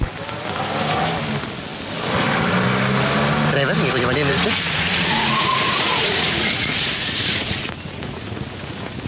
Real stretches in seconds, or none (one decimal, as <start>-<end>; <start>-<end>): 0.0-4.3